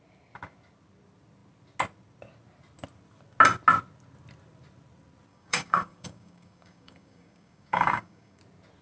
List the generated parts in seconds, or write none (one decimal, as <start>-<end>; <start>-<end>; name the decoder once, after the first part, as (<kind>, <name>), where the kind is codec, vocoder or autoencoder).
5.3-8.4 (codec, DAC)